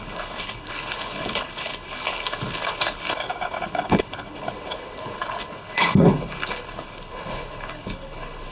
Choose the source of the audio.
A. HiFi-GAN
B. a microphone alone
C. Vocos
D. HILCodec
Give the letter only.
D